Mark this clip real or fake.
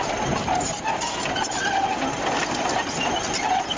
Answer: real